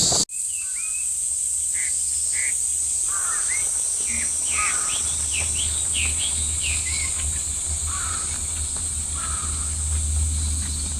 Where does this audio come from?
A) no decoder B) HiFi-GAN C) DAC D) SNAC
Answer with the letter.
A